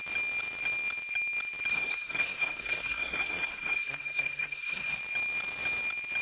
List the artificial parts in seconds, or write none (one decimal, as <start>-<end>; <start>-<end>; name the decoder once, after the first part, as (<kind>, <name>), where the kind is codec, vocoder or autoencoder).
1.7-5.0 (codec, SNAC)